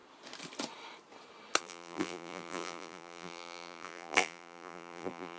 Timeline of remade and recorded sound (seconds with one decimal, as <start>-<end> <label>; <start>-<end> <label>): 0.0-1.6 recorded; 1.6-5.4 remade